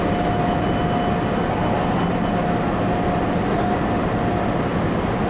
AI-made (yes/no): no